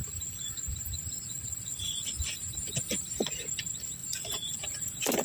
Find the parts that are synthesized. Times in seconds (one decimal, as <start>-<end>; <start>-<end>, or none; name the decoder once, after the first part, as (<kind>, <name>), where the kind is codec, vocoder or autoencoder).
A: 0.0-3.1 (vocoder, BigVGAN v2); 4.0-4.8